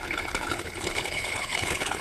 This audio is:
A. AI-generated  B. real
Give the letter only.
A